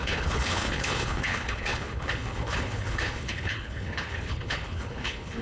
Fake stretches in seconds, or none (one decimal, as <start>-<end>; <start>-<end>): 0.0-5.4